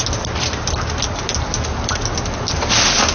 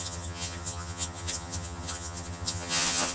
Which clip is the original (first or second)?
first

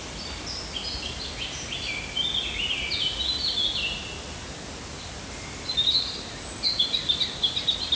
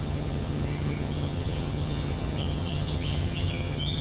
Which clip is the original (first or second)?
first